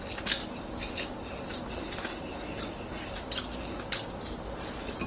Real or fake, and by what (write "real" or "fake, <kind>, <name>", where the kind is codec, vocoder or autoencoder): real